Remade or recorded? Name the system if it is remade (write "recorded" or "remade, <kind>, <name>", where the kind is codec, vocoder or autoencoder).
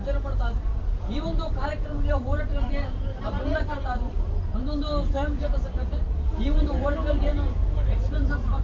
remade, vocoder, BigVGAN v2